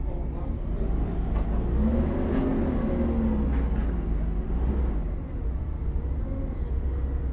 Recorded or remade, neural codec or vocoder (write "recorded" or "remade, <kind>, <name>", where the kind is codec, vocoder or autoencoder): recorded